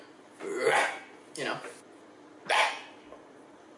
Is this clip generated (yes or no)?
no